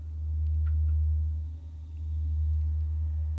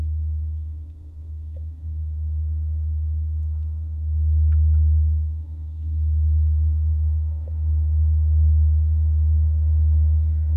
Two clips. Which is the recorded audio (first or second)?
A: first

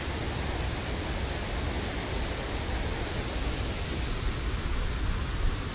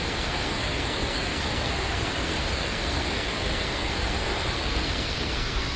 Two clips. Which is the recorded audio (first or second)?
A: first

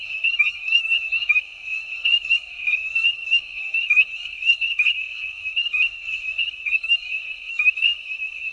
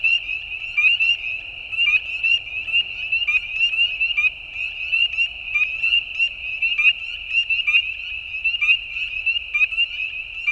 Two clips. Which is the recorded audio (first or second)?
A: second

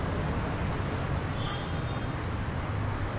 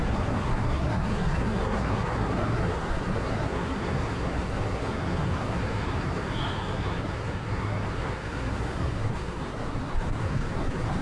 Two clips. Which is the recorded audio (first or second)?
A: first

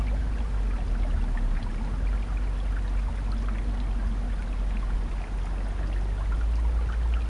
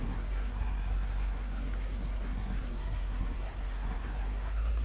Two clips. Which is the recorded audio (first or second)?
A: first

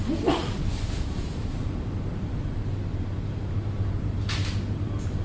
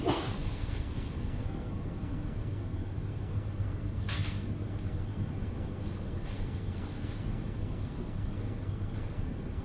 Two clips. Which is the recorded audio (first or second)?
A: first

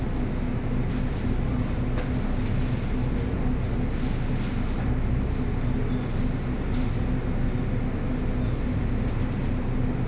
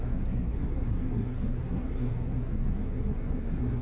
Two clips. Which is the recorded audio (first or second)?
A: first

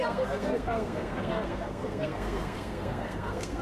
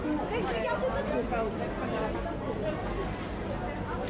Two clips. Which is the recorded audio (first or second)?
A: second